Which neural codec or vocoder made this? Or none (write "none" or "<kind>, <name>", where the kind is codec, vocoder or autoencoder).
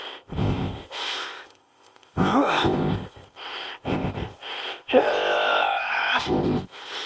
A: codec, ZipCodec